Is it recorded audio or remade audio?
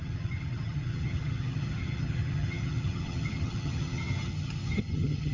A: remade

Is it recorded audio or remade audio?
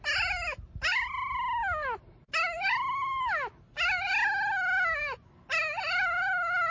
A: recorded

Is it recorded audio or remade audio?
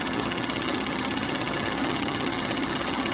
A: remade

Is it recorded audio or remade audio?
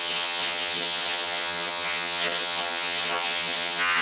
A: remade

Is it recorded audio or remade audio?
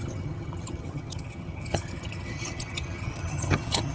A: remade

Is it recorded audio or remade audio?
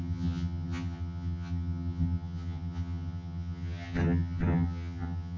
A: remade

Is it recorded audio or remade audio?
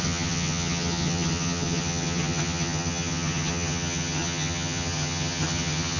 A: remade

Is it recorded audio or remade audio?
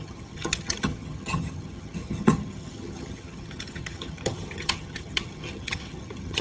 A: remade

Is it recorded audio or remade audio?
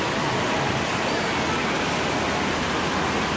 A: recorded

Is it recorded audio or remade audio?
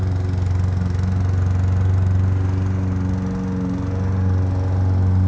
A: recorded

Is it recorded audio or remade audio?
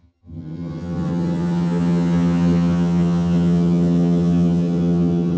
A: remade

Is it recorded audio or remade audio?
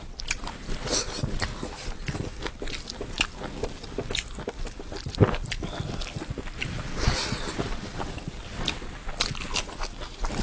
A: recorded